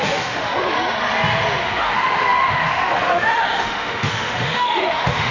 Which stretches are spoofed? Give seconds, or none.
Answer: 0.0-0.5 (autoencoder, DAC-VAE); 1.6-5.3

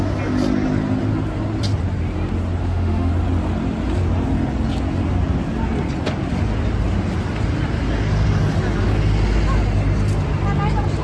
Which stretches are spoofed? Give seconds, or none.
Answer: 2.6-3.1 (autoencoder, DAC-VAE)

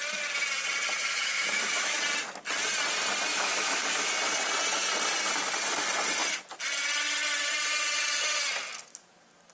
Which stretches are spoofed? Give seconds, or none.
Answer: 1.0-2.0 (autoencoder, DAC-VAE); 3.3-4.1